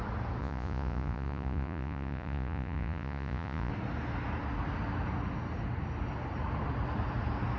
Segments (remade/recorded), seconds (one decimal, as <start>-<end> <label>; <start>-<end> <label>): 0.0-0.4 recorded; 0.4-3.7 remade; 3.7-7.6 recorded